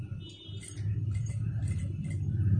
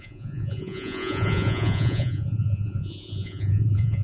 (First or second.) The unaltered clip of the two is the first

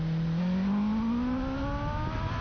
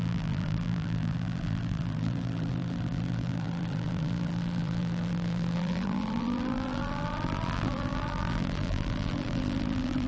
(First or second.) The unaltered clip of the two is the first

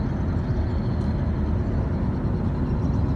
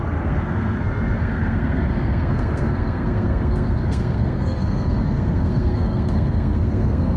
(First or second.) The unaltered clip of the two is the first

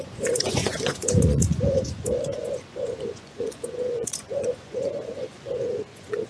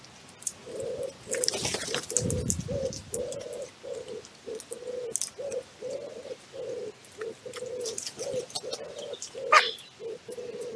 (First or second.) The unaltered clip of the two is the second